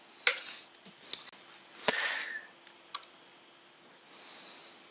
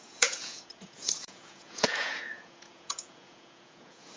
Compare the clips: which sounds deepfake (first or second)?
second